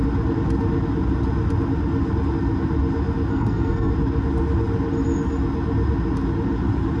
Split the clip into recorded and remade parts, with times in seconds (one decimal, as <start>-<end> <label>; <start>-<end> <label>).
0.0-3.3 recorded; 3.3-3.9 remade; 3.9-7.0 recorded